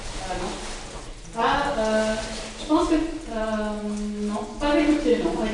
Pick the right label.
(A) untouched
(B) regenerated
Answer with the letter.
A